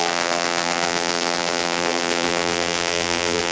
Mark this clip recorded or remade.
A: remade